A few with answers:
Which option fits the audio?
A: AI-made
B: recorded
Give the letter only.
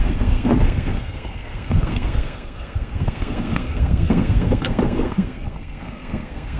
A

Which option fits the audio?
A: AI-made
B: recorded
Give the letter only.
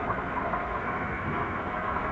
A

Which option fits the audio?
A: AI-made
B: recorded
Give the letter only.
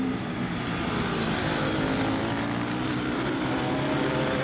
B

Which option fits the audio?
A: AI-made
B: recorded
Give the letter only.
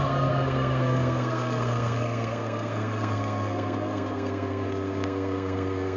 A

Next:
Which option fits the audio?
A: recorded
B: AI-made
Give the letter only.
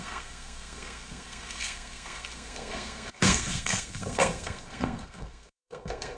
B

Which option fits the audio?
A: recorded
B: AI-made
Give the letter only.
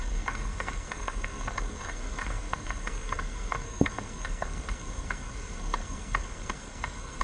B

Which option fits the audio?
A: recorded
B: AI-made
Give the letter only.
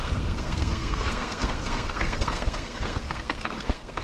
B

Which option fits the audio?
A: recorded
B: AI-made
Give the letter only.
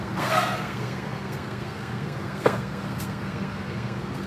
B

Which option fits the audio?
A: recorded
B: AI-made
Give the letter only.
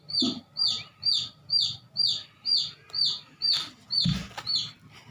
A